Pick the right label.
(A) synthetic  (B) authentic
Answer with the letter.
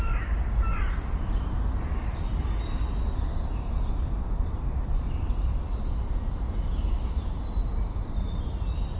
B